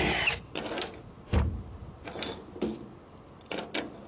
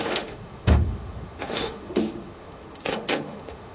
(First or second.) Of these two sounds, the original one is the first